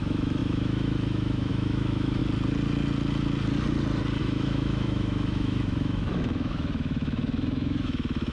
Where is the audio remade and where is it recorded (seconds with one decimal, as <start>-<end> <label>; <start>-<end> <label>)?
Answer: 0.0-2.2 remade; 2.2-4.2 recorded; 4.2-8.3 remade

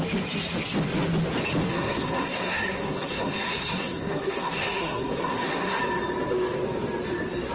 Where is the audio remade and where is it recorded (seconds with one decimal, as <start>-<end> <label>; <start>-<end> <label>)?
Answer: 0.0-1.7 recorded; 1.7-5.8 remade; 5.8-7.5 recorded

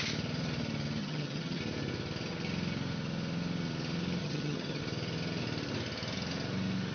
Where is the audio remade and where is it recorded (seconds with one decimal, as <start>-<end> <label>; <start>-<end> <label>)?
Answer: 0.0-1.0 recorded; 1.0-1.6 remade; 1.6-4.2 recorded; 4.2-4.8 remade; 4.8-6.9 recorded

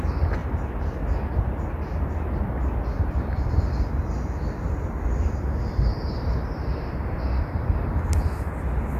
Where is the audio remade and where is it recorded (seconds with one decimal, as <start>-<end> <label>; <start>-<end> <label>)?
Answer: 0.0-6.7 recorded; 6.7-7.6 remade; 7.6-9.0 recorded

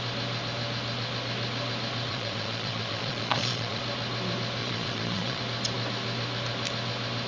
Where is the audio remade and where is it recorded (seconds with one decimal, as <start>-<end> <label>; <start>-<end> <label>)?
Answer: 0.0-2.1 recorded; 2.1-3.8 remade; 3.8-4.6 recorded; 4.6-5.4 remade; 5.4-7.3 recorded

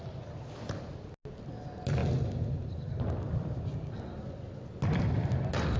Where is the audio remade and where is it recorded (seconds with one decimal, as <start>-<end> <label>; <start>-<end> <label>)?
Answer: 0.0-5.8 recorded

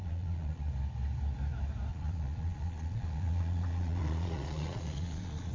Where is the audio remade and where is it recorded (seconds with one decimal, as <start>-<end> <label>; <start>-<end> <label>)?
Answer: 0.0-0.7 remade; 0.7-1.9 recorded; 1.9-5.5 remade

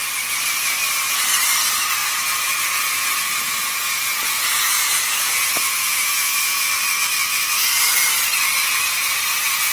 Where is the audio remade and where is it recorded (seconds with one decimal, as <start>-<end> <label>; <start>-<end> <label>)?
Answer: 0.0-2.0 recorded; 2.0-6.7 remade; 6.7-9.7 recorded